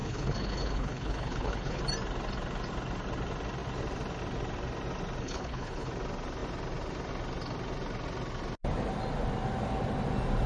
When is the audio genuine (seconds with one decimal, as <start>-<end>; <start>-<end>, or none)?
1.8-5.2; 5.9-10.5